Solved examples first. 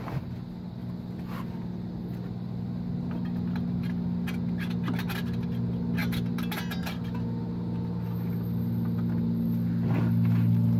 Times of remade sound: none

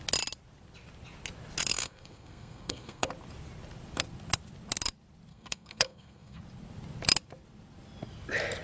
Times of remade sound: 1.7-3.1 (codec, SNAC); 5.3-6.4

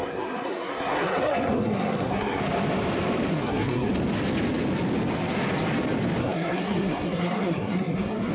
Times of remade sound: 0.0-2.4 (codec, SNAC); 3.3-3.9; 6.2-8.3

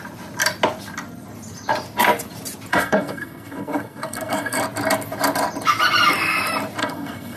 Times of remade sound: 2.7-4.6 (codec, SNAC); 6.8-7.4

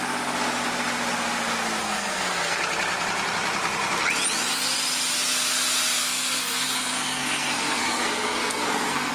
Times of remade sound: 1.8-2.6 (codec, SNAC); 6.0-9.1